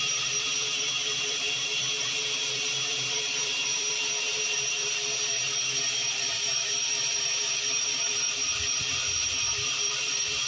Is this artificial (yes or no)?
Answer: yes